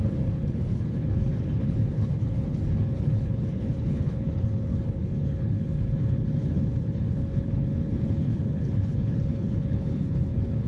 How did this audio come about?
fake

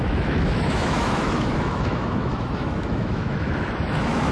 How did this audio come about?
fake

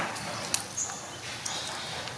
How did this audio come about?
real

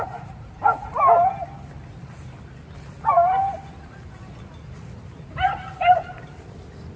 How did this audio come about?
real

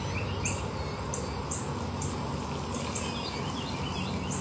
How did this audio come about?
real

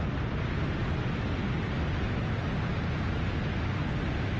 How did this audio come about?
real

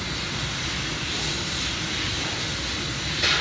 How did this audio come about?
real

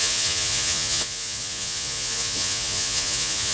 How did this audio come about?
fake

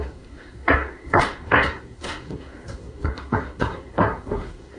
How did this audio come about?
fake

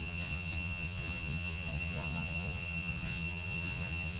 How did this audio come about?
fake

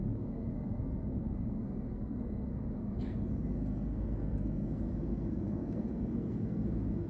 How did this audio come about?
fake